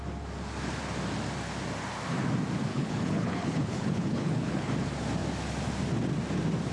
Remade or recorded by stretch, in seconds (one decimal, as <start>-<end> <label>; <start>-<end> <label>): 0.0-2.7 recorded; 2.7-4.7 remade; 4.7-6.7 recorded